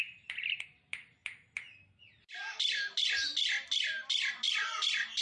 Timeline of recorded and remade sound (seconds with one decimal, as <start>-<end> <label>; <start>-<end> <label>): 0.0-5.2 recorded